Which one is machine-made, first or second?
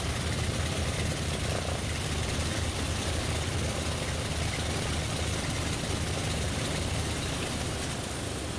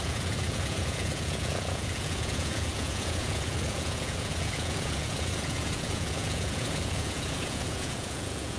second